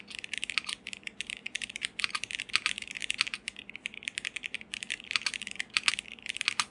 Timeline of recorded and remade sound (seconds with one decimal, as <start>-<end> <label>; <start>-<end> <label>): 0.0-1.4 recorded; 1.4-2.1 remade; 2.1-6.7 recorded